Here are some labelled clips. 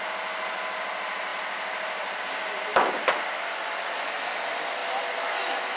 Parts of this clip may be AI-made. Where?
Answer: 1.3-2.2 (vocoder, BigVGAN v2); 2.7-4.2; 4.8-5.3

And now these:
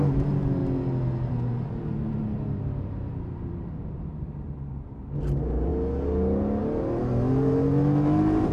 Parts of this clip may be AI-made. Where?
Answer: 0.0-0.6 (vocoder, BigVGAN v2); 1.3-5.7; 6.6-8.5